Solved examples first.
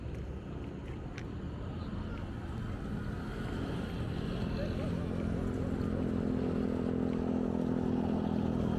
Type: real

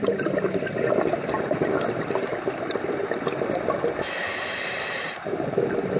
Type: real